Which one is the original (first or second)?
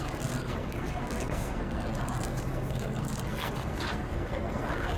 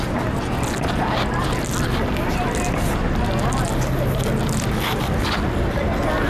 second